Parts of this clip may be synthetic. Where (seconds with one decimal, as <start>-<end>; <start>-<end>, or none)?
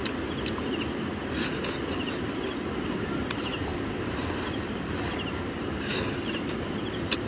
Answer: 3.3-3.7; 5.5-7.3